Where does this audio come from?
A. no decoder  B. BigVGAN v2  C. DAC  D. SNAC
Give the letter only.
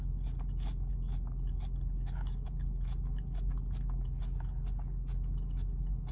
A